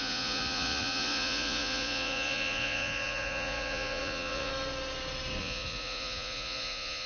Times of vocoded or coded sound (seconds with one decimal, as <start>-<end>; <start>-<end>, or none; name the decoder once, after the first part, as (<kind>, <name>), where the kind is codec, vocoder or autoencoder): 0.0-4.5 (vocoder, Vocos); 5.4-7.1